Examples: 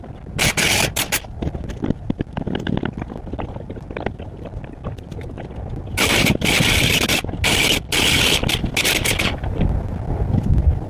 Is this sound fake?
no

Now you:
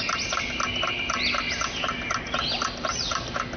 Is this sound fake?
no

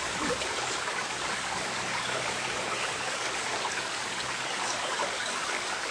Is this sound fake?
yes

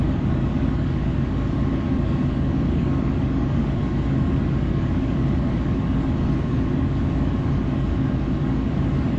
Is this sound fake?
yes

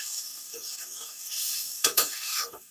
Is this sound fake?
yes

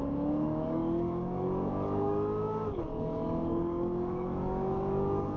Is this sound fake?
yes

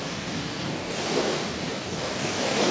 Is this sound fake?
yes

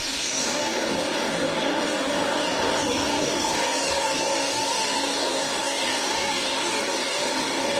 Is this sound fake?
yes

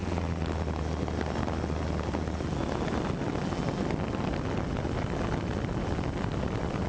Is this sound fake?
no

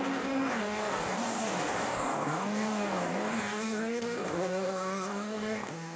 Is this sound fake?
yes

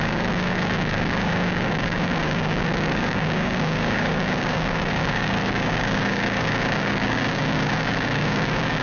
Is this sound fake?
yes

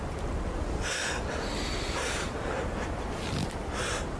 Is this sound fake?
no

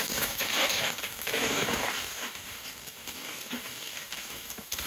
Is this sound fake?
yes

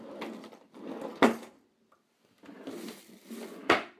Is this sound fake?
no